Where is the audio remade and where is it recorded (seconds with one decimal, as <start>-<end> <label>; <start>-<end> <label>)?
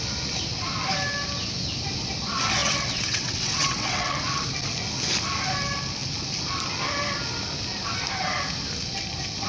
0.0-2.6 recorded; 2.6-4.2 remade; 4.2-9.5 recorded